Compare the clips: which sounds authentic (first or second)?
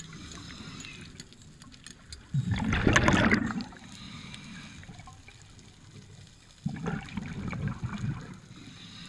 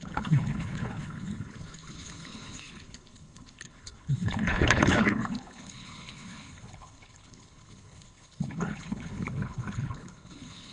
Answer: first